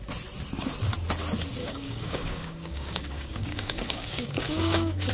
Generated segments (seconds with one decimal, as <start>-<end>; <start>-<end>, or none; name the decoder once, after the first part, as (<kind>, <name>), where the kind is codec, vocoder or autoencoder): 1.6-5.1 (codec, DAC)